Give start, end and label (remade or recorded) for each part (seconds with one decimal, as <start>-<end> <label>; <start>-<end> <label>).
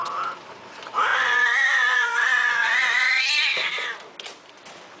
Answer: 0.0-1.1 recorded; 1.1-3.2 remade; 3.2-5.0 recorded